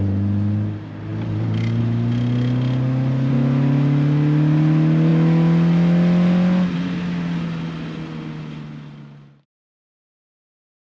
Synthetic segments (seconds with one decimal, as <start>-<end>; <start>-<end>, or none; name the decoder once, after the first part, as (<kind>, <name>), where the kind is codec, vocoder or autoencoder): none